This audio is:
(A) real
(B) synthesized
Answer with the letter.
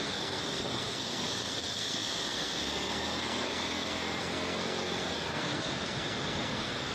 B